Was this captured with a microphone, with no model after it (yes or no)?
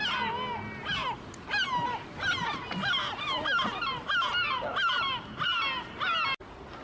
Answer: yes